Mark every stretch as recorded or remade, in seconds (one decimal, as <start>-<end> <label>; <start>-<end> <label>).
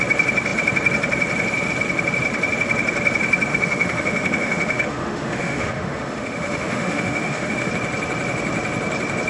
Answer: 0.0-3.5 recorded; 3.5-7.7 remade; 7.7-9.3 recorded